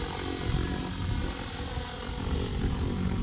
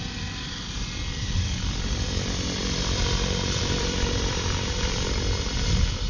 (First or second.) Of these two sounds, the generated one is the second